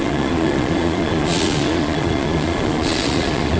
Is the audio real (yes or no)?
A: no